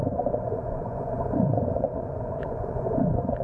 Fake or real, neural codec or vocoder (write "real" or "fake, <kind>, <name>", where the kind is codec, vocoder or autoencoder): fake, vocoder, Vocos